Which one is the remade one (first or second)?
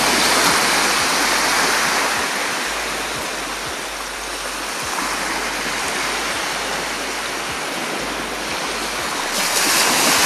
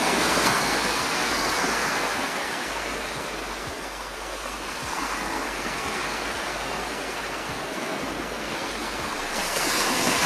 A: second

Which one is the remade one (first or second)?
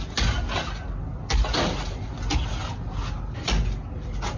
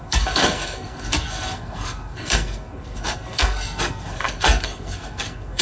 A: second